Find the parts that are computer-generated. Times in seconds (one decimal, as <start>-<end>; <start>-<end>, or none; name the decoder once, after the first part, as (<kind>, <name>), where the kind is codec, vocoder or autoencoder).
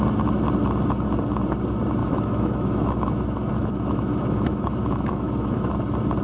2.0-5.7 (autoencoder, DAC-VAE)